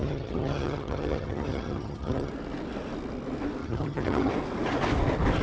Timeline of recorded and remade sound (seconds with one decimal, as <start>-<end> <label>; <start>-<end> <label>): 0.0-2.3 remade; 2.3-3.6 recorded; 3.6-4.3 remade; 4.3-5.4 recorded